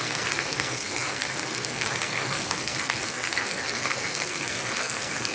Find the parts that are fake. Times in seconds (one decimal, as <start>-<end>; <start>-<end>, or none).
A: 0.0-5.3